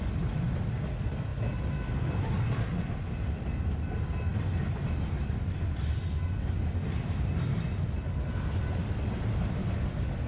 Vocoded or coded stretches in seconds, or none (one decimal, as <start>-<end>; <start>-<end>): none